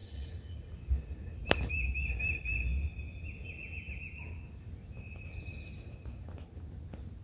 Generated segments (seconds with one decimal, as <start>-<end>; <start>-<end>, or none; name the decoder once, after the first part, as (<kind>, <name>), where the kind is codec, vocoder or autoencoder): 0.0-0.8 (vocoder, Vocos)